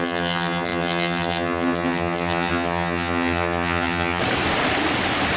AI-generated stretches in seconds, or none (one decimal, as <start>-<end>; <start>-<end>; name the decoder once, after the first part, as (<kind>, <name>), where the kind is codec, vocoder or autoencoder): 0.0-4.2 (vocoder, HiFi-GAN)